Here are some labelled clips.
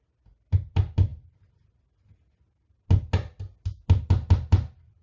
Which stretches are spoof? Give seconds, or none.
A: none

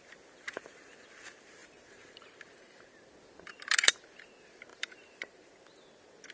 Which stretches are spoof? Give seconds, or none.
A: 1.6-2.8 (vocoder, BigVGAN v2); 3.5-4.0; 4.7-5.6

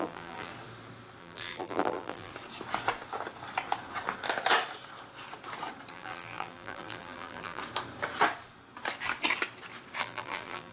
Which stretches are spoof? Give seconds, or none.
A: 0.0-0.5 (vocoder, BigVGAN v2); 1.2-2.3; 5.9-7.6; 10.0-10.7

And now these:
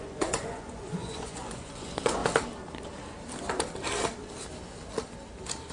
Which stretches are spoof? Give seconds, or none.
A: 0.0-2.2 (vocoder, Vocos)

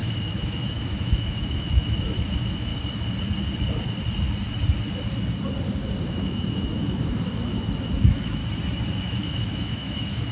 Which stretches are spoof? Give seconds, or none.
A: 0.0-2.7 (autoencoder, DAC-VAE); 6.0-8.4; 9.0-10.3

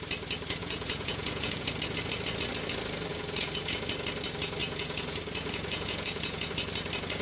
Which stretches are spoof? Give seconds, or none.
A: 0.6-1.7 (vocoder, Vocos); 3.1-3.8; 4.6-6.5

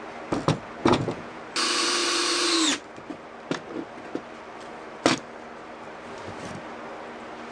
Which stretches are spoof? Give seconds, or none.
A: 0.8-1.4 (vocoder, Vocos)